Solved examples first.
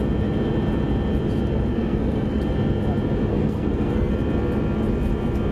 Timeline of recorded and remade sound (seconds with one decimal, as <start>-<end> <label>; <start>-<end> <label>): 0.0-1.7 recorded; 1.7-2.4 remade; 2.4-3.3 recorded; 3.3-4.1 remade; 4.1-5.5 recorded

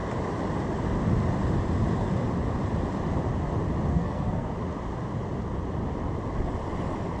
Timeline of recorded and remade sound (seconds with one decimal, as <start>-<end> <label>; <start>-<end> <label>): 0.0-3.9 recorded; 3.9-4.5 remade; 4.5-7.2 recorded

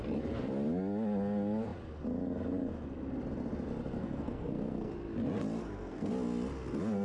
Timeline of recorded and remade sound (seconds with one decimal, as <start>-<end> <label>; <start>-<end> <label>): 0.0-4.0 recorded; 4.0-4.9 remade; 4.9-5.6 recorded; 5.6-6.1 remade; 6.1-7.0 recorded

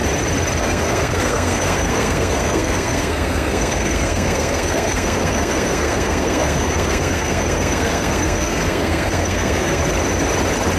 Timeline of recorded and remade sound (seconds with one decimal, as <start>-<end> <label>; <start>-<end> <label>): 0.0-0.6 recorded; 0.6-9.8 remade; 9.8-10.8 recorded

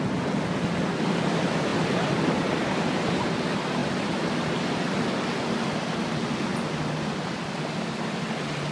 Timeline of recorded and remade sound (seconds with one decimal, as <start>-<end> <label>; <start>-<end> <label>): 0.0-8.7 recorded